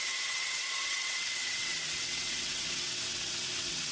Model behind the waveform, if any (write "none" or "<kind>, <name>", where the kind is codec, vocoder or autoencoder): vocoder, WaveNeXt